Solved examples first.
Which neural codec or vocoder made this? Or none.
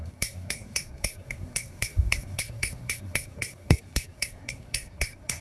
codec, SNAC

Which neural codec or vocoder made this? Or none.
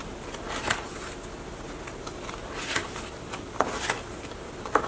none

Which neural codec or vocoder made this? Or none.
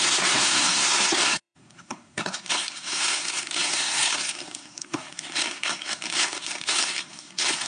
codec, SNAC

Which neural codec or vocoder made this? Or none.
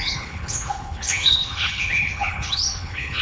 codec, HILCodec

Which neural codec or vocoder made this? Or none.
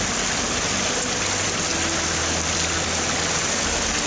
none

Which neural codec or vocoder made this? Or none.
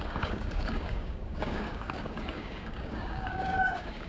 codec, DAC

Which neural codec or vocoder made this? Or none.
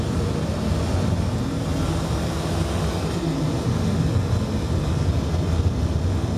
none